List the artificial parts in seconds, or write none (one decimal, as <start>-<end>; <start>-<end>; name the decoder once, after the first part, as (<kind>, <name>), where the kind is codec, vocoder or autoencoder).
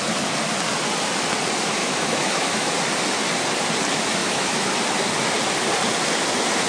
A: 1.8-2.7 (autoencoder, DAC-VAE); 4.2-4.7